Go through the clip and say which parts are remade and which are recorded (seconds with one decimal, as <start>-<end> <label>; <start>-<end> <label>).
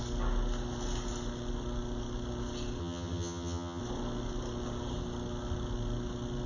0.0-2.8 recorded; 2.8-3.8 remade; 3.8-6.5 recorded